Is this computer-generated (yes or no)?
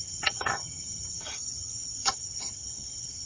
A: yes